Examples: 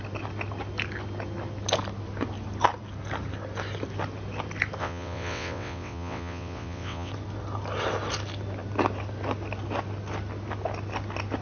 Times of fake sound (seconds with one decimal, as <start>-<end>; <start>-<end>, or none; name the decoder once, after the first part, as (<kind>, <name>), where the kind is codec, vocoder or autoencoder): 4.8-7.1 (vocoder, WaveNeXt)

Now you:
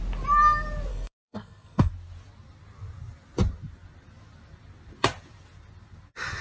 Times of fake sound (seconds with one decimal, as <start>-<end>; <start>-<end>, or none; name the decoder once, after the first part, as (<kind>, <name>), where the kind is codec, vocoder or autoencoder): 0.9-1.9 (codec, SNAC)

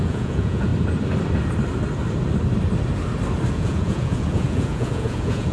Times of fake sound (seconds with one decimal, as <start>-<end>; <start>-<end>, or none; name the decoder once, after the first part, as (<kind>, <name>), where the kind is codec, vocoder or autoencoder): 0.0-0.7 (vocoder, Vocos); 3.5-5.5